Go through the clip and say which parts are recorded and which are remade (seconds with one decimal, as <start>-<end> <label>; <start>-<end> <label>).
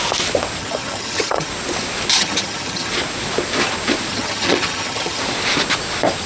0.0-0.6 recorded; 0.6-1.5 remade; 1.5-2.1 recorded; 2.1-2.9 remade; 2.9-4.1 recorded; 4.1-5.2 remade; 5.2-6.3 recorded